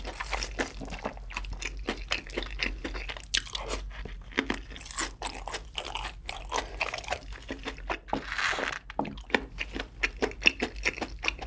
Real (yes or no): yes